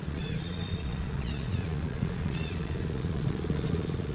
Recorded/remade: remade